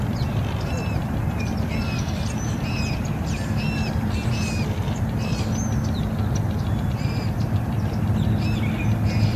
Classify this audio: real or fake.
real